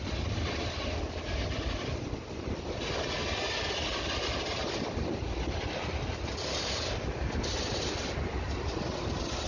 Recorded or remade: recorded